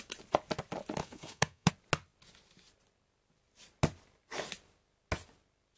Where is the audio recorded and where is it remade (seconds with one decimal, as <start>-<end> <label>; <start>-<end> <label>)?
0.0-1.0 recorded; 1.0-1.7 remade; 1.7-5.8 recorded